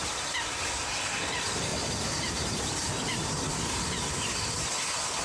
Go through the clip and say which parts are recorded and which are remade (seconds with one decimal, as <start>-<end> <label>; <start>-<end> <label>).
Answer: 0.0-0.8 remade; 0.8-1.7 recorded; 1.7-4.8 remade; 4.8-5.2 recorded